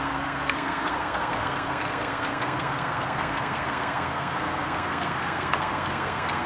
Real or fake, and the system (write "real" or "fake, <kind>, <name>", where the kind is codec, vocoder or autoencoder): fake, codec, SNAC